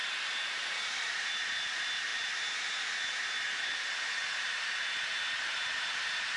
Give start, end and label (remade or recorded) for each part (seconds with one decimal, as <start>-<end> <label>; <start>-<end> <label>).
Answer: 0.0-6.4 recorded